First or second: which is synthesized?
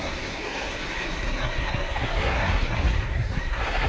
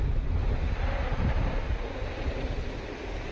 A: first